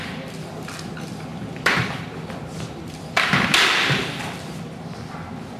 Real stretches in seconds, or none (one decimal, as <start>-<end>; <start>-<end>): 0.0-1.3; 4.0-5.6